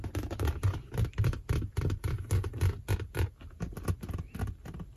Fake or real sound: real